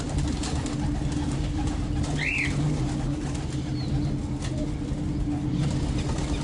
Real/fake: real